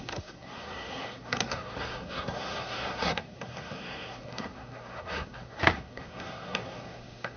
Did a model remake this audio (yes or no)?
yes